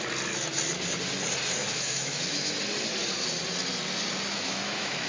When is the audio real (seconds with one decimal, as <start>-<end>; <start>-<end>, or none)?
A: 0.0-1.6; 2.5-4.3